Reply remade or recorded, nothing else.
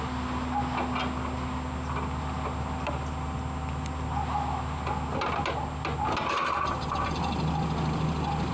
recorded